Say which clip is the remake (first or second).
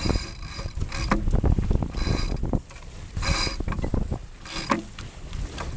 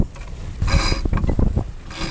first